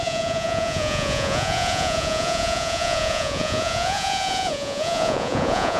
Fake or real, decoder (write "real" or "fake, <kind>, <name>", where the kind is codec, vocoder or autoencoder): fake, vocoder, Vocos